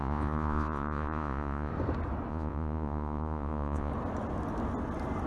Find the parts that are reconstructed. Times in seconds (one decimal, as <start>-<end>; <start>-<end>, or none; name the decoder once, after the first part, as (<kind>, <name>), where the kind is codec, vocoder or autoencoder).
0.0-1.7 (vocoder, Vocos); 2.3-3.9